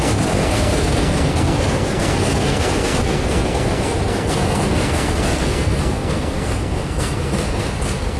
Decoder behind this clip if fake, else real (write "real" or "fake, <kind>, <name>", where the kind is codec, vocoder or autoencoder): fake, codec, SNAC